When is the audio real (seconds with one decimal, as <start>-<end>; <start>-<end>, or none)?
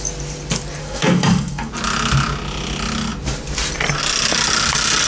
0.0-0.8; 1.7-5.1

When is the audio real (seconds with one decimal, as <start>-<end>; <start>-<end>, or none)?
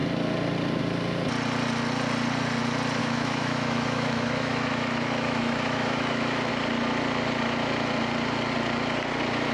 0.0-3.0; 6.5-9.5